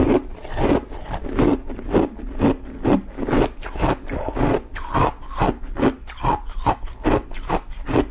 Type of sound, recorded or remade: recorded